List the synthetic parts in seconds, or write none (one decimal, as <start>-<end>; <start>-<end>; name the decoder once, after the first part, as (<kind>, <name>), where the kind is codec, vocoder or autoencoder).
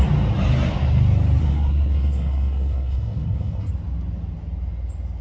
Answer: 1.4-3.7 (codec, SNAC)